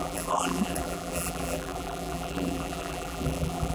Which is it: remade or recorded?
remade